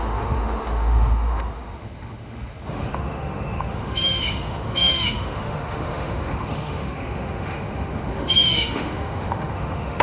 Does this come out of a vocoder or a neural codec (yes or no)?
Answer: yes